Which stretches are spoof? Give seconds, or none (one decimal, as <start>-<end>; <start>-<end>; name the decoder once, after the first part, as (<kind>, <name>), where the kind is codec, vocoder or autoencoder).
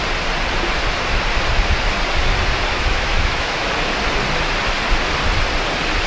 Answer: 2.7-3.7 (autoencoder, DAC-VAE)